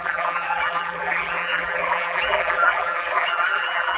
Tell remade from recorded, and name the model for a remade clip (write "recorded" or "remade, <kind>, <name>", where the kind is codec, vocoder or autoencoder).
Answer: remade, vocoder, BigVGAN v2